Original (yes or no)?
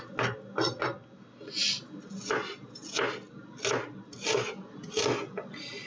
yes